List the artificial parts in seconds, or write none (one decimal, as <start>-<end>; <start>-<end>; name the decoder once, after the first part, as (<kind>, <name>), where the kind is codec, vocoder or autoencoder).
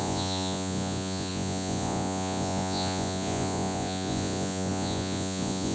0.0-5.7 (vocoder, Vocos)